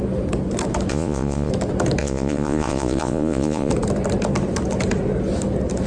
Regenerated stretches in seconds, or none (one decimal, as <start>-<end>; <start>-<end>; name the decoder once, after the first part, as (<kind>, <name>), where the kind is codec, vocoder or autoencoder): 0.9-1.5 (vocoder, Vocos); 2.0-3.7